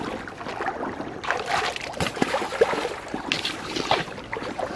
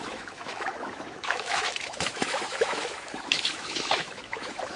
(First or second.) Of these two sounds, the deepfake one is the second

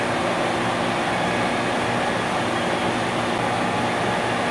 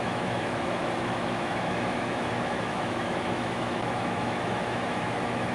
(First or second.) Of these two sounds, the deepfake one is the second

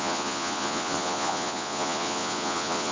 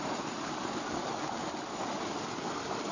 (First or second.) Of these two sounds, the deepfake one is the first